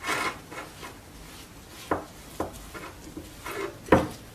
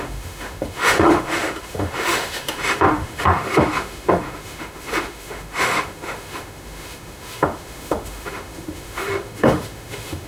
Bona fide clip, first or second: first